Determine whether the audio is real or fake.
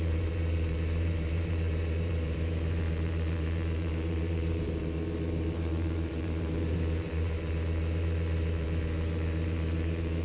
fake